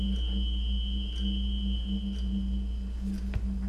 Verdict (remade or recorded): recorded